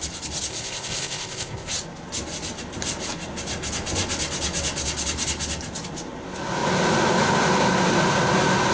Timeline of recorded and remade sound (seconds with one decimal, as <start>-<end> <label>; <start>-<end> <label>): 0.0-0.5 recorded; 0.5-1.7 remade; 1.7-8.7 recorded

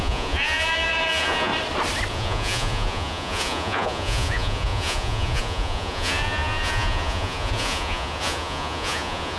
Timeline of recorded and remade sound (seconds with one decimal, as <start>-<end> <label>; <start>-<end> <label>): 0.0-1.5 remade; 1.5-2.1 recorded; 2.1-9.4 remade

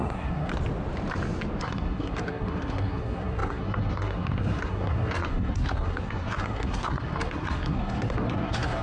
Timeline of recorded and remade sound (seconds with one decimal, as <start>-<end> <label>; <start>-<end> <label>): 0.0-0.5 remade; 0.5-1.6 recorded; 1.6-8.8 remade

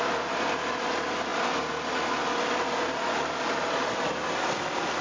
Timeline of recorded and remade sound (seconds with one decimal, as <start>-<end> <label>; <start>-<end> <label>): 0.0-5.0 recorded

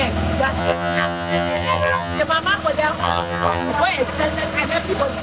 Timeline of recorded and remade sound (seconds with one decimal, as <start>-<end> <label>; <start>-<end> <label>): 0.0-0.6 recorded; 0.6-2.2 remade; 2.2-3.0 recorded; 3.0-3.7 remade; 3.7-5.2 recorded

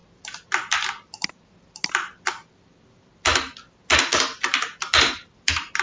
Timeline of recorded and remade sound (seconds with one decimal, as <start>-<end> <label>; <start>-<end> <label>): 0.0-5.8 recorded